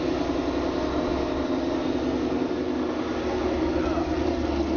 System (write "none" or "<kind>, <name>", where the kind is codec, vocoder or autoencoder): none